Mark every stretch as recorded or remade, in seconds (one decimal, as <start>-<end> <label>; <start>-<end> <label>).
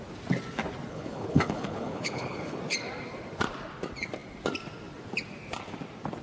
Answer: 0.0-0.9 recorded; 0.9-2.6 remade; 2.6-6.2 recorded